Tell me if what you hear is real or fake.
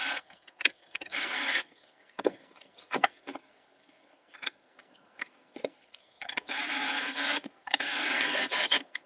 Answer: fake